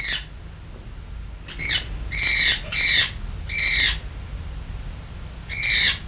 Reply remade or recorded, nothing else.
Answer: recorded